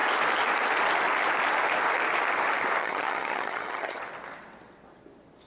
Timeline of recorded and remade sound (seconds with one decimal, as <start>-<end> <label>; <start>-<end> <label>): 0.0-2.8 recorded; 2.8-4.0 remade; 4.0-5.5 recorded